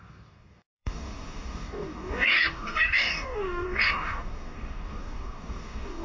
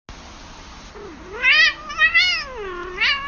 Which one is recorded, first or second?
second